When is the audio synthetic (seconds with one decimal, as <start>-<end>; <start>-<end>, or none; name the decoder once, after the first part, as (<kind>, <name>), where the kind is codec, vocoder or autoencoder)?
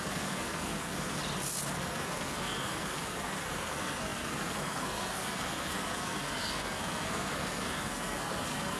0.0-1.2 (codec, SNAC); 1.8-8.8